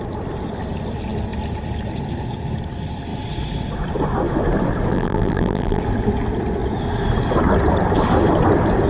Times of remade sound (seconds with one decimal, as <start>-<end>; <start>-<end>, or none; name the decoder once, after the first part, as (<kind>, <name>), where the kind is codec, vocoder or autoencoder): 4.9-5.8 (vocoder, BigVGAN v2)

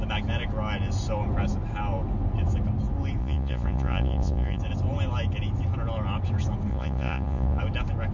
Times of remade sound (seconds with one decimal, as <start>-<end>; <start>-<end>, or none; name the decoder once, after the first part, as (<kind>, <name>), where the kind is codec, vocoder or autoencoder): 3.2-4.6 (vocoder, Vocos); 6.7-7.6

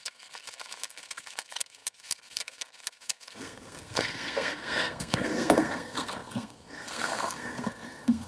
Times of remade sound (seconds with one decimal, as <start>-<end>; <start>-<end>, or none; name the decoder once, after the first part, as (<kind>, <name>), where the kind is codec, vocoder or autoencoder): 0.0-8.3 (codec, SNAC)

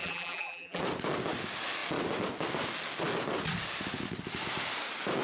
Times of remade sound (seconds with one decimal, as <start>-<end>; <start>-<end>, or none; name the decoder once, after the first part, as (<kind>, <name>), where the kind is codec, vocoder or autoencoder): 0.0-0.8 (vocoder, BigVGAN v2)

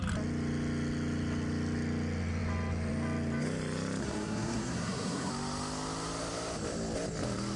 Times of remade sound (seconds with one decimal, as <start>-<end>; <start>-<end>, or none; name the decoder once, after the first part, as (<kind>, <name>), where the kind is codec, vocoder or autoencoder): 4.0-5.3 (codec, SNAC)

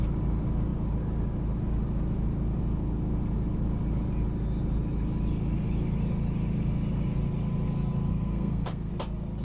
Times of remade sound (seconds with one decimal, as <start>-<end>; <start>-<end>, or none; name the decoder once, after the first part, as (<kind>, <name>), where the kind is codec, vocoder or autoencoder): 8.1-8.9 (codec, SNAC)

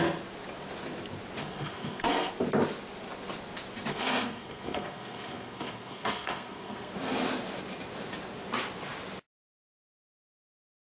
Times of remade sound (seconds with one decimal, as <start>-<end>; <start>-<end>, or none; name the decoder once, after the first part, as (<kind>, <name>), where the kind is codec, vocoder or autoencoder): 1.4-2.3 (codec, SNAC); 3.9-6.9